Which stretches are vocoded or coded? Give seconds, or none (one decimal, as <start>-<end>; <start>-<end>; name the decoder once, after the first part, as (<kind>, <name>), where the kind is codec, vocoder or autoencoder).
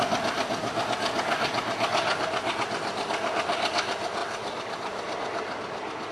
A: none